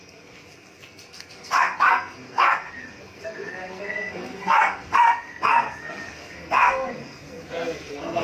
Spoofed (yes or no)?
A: yes